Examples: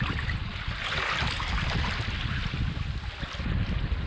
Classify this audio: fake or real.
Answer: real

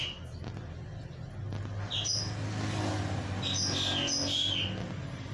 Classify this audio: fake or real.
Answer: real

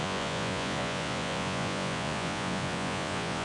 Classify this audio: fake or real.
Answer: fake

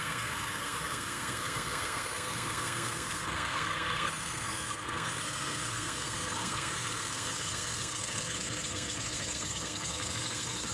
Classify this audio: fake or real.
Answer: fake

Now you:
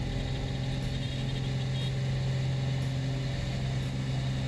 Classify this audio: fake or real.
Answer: real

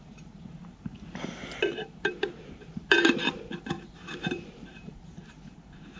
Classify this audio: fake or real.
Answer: fake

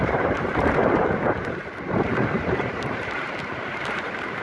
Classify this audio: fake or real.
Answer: fake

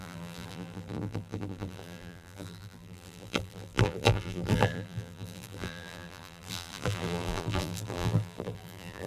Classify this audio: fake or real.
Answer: fake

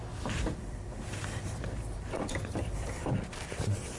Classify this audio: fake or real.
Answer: fake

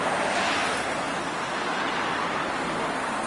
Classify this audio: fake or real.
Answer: real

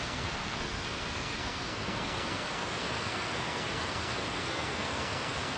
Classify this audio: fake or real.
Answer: fake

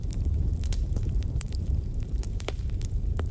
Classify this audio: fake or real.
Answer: fake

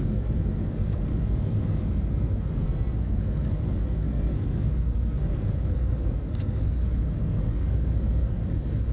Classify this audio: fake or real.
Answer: fake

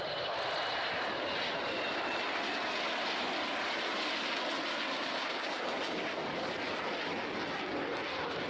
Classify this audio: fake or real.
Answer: real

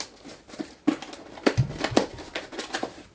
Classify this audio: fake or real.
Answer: real